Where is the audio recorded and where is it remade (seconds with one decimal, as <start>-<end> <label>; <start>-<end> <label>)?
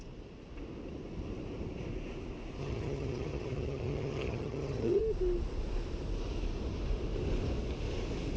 0.0-2.6 recorded; 2.6-5.0 remade; 5.0-8.4 recorded